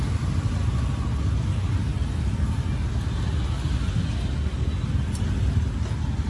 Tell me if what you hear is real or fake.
real